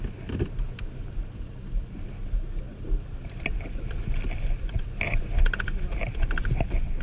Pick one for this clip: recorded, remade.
recorded